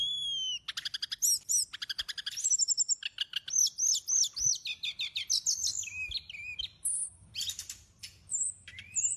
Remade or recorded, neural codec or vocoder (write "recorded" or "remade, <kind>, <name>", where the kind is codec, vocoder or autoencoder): recorded